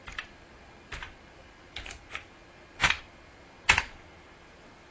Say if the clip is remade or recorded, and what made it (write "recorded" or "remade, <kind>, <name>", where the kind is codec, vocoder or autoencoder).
recorded